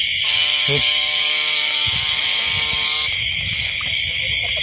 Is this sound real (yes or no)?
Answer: no